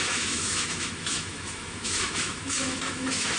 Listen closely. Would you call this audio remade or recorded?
remade